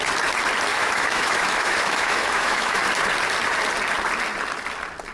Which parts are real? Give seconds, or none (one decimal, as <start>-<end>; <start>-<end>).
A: 0.0-0.7; 2.8-5.1